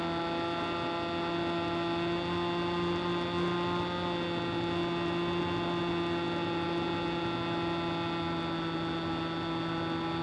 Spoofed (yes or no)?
no